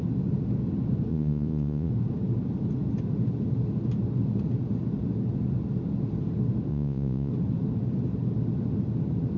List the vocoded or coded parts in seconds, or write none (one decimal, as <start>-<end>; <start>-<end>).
1.1-1.9; 6.7-7.3